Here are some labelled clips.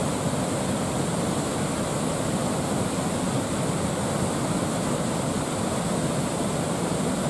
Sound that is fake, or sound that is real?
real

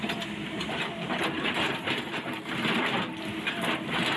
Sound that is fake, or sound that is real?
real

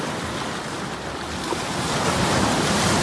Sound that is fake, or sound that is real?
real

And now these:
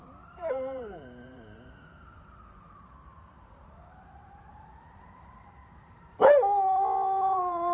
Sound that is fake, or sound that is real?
fake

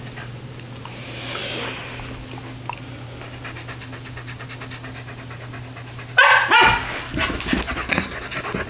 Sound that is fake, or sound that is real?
real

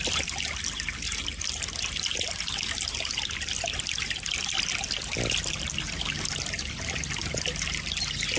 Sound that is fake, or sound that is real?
real